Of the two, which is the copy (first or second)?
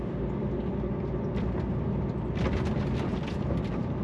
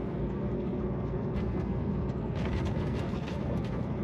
second